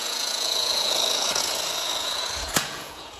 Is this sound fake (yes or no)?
yes